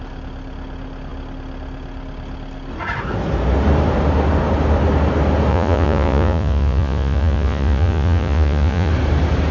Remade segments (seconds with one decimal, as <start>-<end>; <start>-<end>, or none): 5.5-8.9